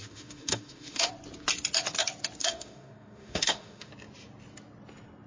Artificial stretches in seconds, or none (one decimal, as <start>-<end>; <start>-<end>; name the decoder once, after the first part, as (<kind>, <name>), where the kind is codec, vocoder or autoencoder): 0.0-1.1 (autoencoder, DAC-VAE); 2.4-3.9